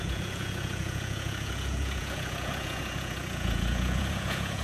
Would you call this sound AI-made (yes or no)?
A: yes